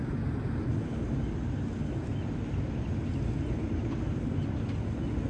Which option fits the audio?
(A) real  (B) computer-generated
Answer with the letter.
A